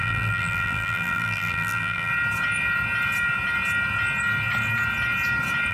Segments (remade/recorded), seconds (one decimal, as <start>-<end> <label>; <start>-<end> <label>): 0.0-2.1 remade; 2.1-5.7 recorded